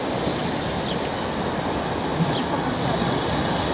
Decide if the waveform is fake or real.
real